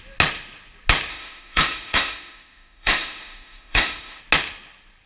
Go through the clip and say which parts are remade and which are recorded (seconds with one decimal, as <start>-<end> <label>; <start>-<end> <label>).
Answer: 0.0-1.1 recorded; 1.1-4.2 remade; 4.2-5.1 recorded